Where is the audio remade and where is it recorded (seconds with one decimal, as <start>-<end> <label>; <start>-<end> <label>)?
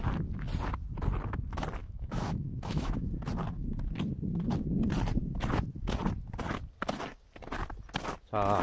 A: 0.0-1.8 recorded; 1.8-3.1 remade; 3.1-8.6 recorded